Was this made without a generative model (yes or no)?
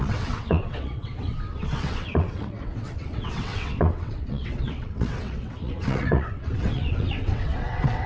no